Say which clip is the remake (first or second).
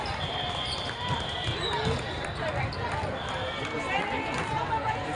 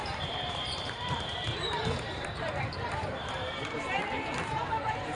second